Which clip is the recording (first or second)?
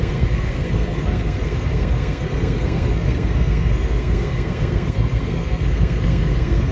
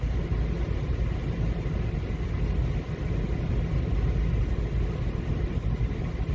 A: second